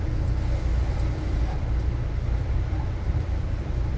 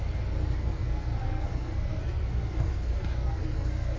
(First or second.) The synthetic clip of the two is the second